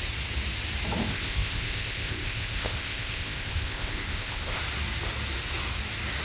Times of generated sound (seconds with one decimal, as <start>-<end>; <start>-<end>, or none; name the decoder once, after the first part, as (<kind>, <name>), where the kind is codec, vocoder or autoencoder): 1.0-4.6 (codec, ZipCodec)